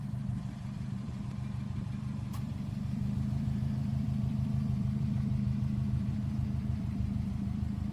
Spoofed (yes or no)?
yes